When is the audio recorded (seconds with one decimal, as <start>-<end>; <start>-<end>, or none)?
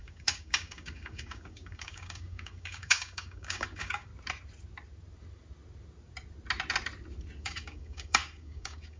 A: 4.1-7.4